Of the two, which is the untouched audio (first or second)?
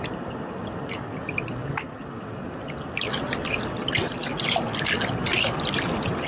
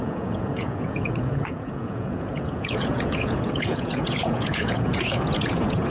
first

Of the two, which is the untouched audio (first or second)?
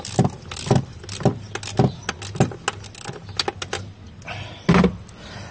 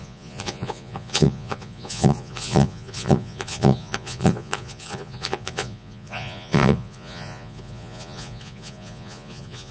first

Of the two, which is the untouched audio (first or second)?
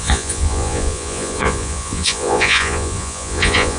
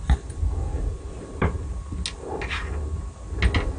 second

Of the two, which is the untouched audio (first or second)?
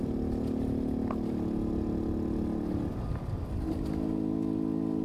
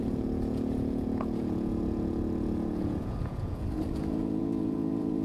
first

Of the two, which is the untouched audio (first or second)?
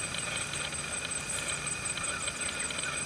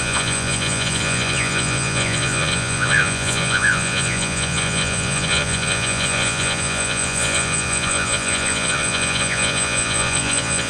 first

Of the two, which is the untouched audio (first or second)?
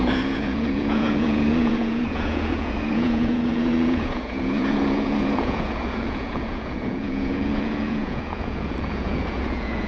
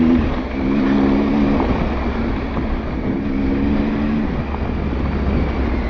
second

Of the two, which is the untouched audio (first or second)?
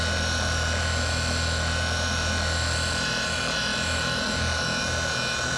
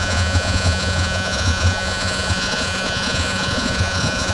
first